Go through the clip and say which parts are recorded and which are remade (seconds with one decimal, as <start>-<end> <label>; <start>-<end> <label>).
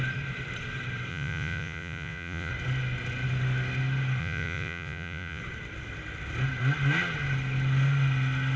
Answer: 0.0-1.1 recorded; 1.1-2.5 remade; 2.5-4.2 recorded; 4.2-5.4 remade; 5.4-8.6 recorded